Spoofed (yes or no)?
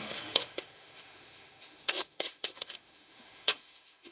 yes